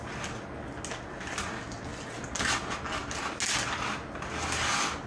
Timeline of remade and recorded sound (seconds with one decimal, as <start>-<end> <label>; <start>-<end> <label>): 0.0-5.1 recorded